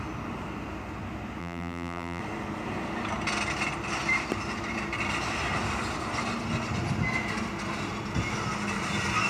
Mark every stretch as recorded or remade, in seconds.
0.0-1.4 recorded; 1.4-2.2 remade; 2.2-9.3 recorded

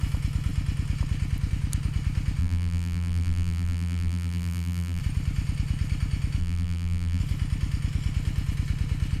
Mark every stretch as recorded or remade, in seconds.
0.0-2.4 recorded; 2.4-5.0 remade; 5.0-6.4 recorded; 6.4-7.2 remade; 7.2-9.2 recorded